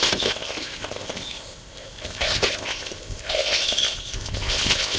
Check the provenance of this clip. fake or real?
fake